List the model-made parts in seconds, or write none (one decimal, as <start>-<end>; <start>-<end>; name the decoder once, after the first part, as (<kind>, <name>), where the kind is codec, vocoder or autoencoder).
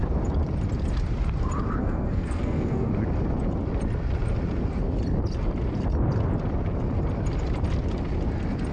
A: 1.8-2.9 (codec, SNAC)